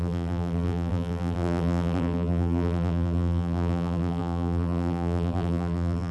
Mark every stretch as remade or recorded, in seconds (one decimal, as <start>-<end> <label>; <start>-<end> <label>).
0.0-6.1 remade